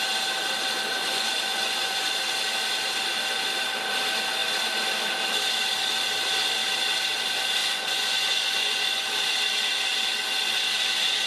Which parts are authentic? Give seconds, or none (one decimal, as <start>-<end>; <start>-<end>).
0.0-1.0; 2.1-7.6; 9.1-11.3